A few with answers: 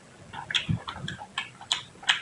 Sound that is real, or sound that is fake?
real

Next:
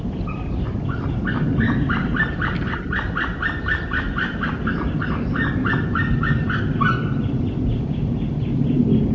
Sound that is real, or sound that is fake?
real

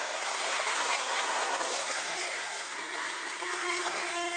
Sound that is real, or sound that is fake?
fake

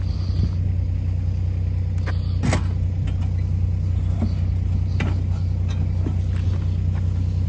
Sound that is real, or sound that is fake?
real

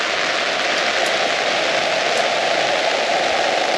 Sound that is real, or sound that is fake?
real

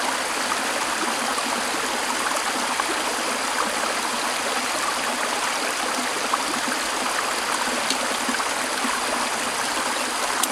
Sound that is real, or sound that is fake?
real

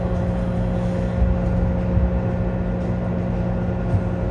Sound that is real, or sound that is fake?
real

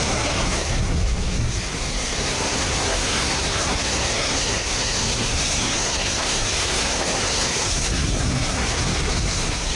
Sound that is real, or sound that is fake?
fake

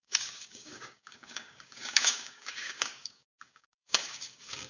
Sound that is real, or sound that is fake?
fake